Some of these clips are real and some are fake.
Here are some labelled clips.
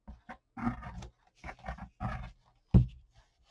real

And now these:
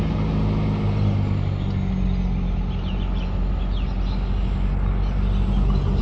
real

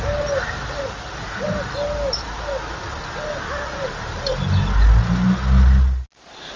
real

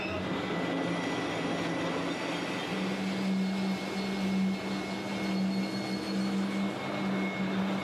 real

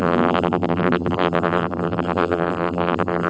fake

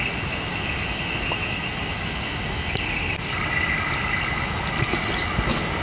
real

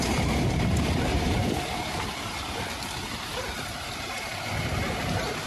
fake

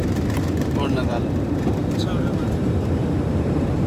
fake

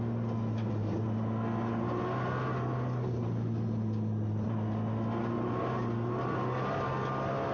real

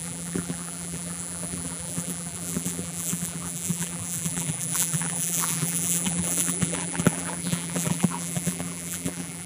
fake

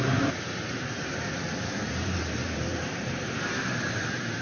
fake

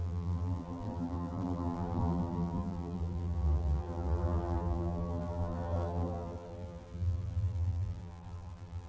fake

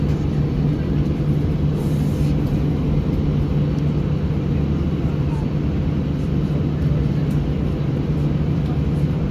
real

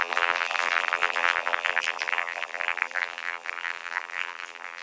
fake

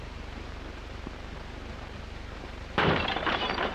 fake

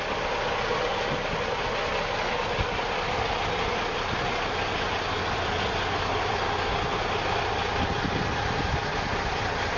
real